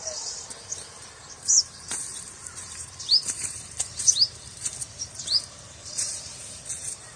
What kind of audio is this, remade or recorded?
remade